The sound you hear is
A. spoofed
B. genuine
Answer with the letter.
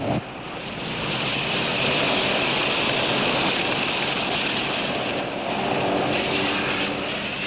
B